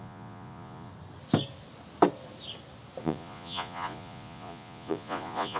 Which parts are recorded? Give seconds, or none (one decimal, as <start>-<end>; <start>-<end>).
0.9-3.0